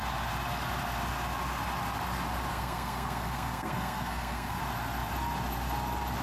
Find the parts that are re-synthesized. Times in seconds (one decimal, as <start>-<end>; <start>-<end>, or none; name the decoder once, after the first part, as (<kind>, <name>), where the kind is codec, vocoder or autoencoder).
2.5-4.6 (codec, SNAC)